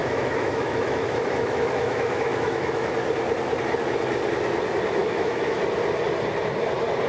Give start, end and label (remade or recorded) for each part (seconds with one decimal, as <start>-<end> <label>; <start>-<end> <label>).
0.0-2.9 remade; 2.9-5.0 recorded; 5.0-5.6 remade; 5.6-7.1 recorded